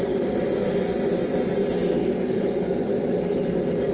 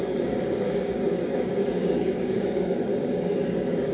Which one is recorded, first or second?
first